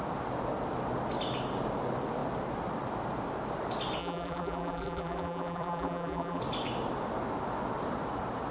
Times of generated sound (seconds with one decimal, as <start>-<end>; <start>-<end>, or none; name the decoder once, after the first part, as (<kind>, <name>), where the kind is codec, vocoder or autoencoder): 4.0-6.4 (vocoder, BigVGAN v2)

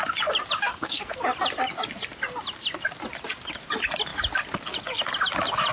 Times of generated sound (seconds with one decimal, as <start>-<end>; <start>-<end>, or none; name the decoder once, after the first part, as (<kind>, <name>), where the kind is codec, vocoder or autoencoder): 0.7-1.2 (codec, SNAC)

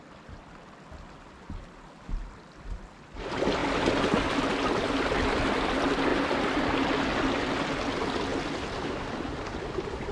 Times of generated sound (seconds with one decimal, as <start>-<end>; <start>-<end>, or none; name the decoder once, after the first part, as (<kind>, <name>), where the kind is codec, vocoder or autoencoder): none

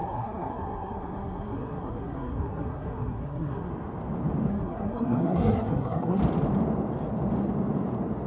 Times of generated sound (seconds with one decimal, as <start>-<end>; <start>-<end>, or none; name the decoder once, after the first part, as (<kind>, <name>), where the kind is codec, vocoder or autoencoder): 0.0-3.7 (codec, SNAC); 4.5-6.2

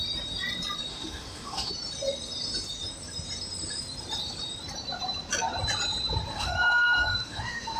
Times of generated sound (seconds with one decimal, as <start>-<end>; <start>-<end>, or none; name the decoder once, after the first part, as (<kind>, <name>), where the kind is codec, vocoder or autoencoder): 0.9-1.7 (autoencoder, DAC-VAE); 6.3-7.8